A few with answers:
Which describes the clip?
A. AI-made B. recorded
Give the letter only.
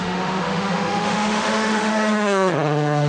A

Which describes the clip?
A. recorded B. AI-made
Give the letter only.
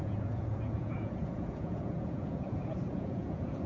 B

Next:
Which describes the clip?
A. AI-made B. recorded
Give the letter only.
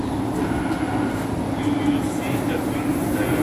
B